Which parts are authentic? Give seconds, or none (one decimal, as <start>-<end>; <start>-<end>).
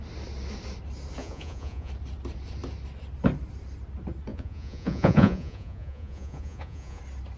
0.0-1.2; 1.9-4.3; 7.0-7.4